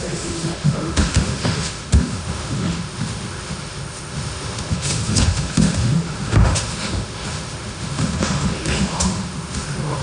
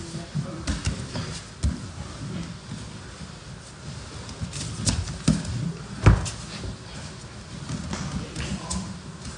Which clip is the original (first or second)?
second